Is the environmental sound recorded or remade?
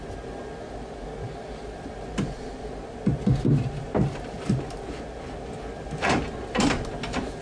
recorded